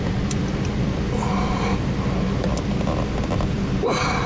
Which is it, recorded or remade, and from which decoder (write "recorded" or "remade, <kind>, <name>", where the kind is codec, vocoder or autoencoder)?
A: recorded